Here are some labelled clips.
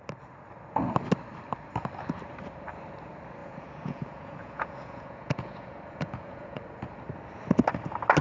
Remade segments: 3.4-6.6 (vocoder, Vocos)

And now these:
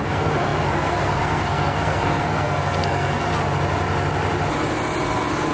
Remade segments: 0.0-3.3 (codec, SNAC)

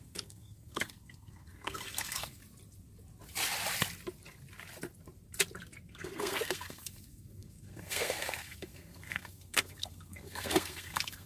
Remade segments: 0.0-2.4 (codec, SNAC); 5.8-11.3

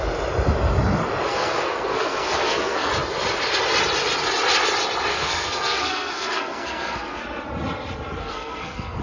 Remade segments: 1.3-2.9 (codec, SNAC); 5.1-7.2; 8.2-9.0

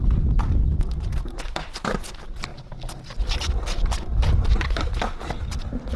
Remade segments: none

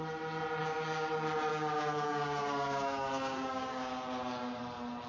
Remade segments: 0.6-1.1 (codec, DAC); 1.5-4.6